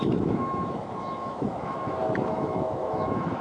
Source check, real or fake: fake